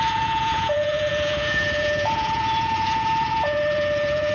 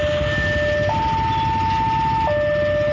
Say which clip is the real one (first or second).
second